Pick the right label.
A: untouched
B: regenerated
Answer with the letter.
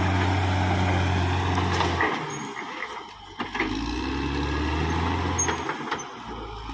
A